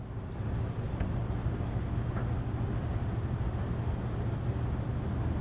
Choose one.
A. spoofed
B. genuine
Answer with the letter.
B